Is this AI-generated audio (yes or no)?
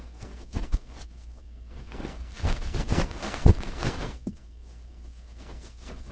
yes